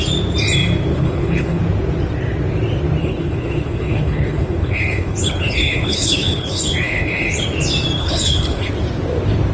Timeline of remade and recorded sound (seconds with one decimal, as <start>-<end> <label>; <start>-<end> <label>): 0.0-0.9 recorded; 0.9-1.6 remade; 1.6-3.0 recorded; 3.0-7.4 remade; 7.4-8.0 recorded; 8.0-8.7 remade; 8.7-9.5 recorded

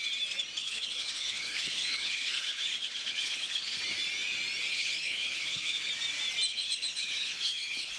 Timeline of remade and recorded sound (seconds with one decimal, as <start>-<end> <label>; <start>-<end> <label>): 0.0-0.6 recorded; 0.6-3.8 remade; 3.8-4.7 recorded; 4.7-5.9 remade; 5.9-6.5 recorded; 6.5-8.0 remade

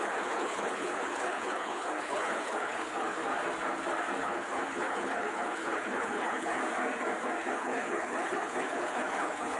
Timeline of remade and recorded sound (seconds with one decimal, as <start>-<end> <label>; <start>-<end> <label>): 0.0-3.2 remade; 3.2-4.2 recorded; 4.2-6.6 remade; 6.6-7.5 recorded; 7.5-9.6 remade

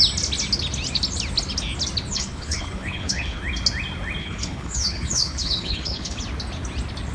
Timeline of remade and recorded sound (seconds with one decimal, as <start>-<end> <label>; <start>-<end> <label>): 0.0-2.1 recorded; 2.1-3.4 remade; 3.4-4.2 recorded; 4.2-6.2 remade; 6.2-7.1 recorded

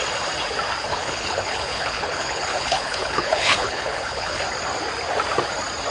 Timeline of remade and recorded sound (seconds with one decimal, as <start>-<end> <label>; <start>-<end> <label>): 0.0-0.9 recorded; 0.9-4.4 remade; 4.4-5.9 recorded

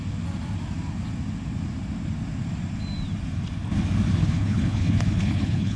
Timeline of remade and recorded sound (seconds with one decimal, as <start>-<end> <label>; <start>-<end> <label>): 0.0-4.2 recorded; 4.2-5.8 remade